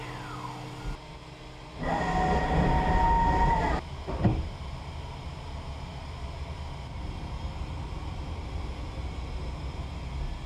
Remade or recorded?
recorded